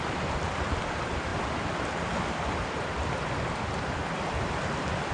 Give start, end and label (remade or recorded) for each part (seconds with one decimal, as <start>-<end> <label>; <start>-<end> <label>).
0.0-5.1 recorded